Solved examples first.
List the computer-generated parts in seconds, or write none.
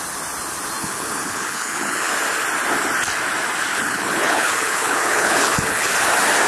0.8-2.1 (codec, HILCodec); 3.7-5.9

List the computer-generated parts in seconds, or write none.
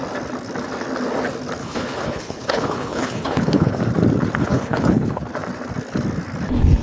1.6-3.8 (codec, HILCodec); 4.4-5.2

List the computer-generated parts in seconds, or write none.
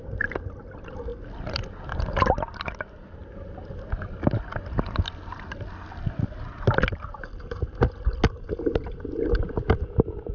none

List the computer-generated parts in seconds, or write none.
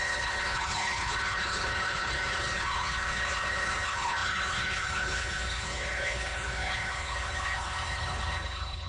0.0-8.9 (codec, HILCodec)